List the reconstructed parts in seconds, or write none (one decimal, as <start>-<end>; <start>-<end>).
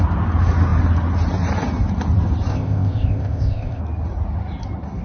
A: 2.5-3.8